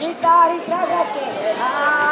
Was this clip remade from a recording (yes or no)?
no